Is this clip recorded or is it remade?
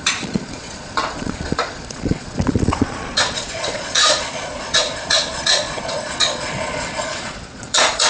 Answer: remade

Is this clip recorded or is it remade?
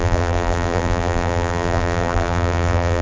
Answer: remade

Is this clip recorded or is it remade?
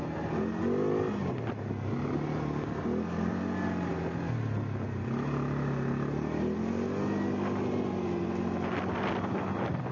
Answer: recorded